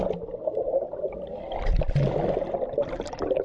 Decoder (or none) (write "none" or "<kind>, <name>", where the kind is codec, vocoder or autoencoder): none